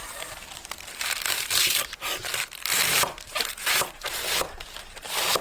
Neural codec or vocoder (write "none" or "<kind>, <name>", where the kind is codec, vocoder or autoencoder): vocoder, BigVGAN v2